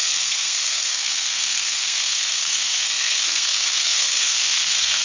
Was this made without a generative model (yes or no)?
no